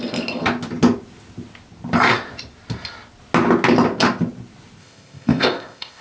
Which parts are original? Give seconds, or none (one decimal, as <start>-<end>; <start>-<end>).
0.0-4.8

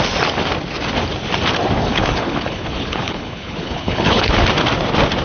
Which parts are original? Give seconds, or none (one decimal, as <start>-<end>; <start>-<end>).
0.0-1.8; 4.3-5.2

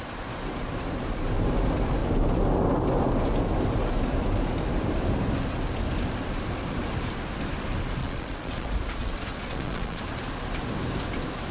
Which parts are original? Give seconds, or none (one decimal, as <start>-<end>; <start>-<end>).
0.0-8.0; 10.0-11.5

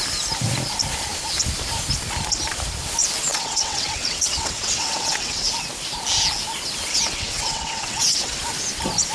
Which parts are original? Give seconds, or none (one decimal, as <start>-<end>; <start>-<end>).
0.0-3.3; 5.5-6.9; 8.4-9.1